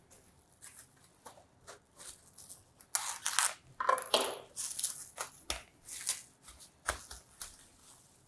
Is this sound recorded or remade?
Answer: recorded